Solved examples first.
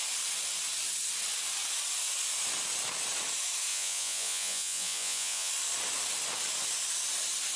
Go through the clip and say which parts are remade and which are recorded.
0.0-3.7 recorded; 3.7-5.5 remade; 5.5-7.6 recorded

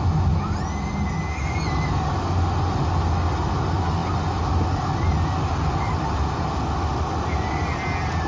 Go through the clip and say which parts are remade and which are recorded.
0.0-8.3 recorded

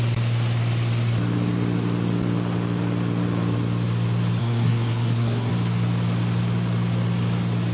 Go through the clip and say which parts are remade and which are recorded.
0.0-4.4 recorded; 4.4-5.5 remade; 5.5-7.7 recorded

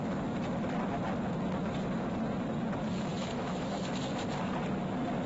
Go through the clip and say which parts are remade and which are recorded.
0.0-2.8 recorded; 2.8-4.1 remade; 4.1-5.3 recorded

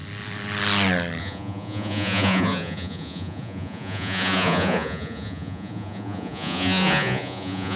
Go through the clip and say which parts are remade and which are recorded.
0.0-1.2 recorded; 1.2-7.8 remade

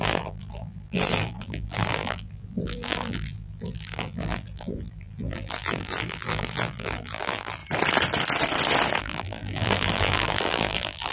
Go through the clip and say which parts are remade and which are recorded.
0.0-7.6 remade; 7.6-9.0 recorded; 9.0-11.1 remade